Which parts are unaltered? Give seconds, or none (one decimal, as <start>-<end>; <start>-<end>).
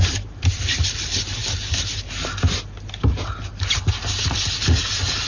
1.4-4.6